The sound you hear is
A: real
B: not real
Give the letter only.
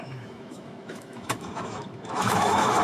B